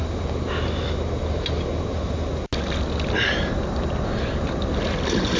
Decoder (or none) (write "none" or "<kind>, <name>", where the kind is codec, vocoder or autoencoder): none